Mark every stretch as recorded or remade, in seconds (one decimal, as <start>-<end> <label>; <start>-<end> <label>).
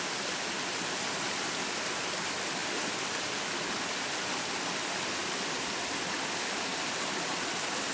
0.0-7.9 recorded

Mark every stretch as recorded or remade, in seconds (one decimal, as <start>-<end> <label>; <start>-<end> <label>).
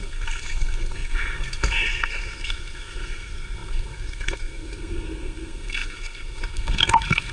0.0-7.3 remade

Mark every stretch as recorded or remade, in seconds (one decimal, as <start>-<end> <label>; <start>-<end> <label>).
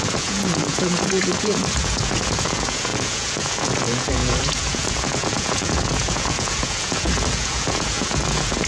0.0-8.7 remade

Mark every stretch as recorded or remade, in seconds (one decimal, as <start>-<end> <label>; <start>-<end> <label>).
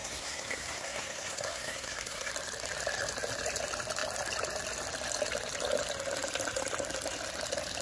0.0-2.3 remade; 2.3-7.8 recorded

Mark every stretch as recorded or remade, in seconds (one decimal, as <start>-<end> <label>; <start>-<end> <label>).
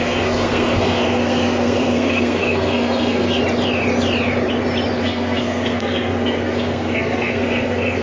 0.0-3.4 remade; 3.4-5.0 recorded; 5.0-8.0 remade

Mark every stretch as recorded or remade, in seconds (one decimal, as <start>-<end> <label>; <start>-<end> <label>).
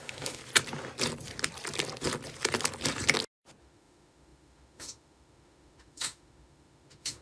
0.0-0.4 remade; 0.4-3.6 recorded; 3.6-7.2 remade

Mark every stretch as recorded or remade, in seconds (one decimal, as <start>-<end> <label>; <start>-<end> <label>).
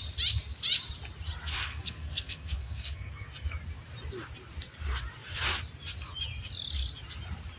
0.0-1.6 recorded; 1.6-3.3 remade; 3.3-7.6 recorded